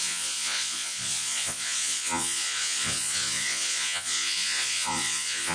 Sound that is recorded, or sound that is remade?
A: remade